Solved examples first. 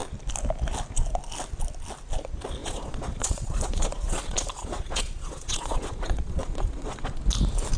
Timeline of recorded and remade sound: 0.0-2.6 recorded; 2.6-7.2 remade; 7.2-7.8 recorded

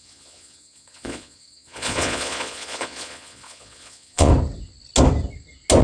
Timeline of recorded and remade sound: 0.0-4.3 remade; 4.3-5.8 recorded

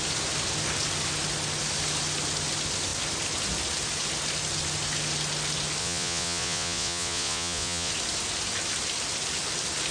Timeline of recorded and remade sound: 0.0-5.8 recorded; 5.8-7.9 remade; 7.9-9.9 recorded

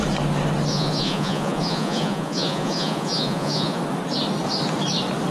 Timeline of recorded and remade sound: 0.0-0.7 recorded; 0.7-3.8 remade; 3.8-5.3 recorded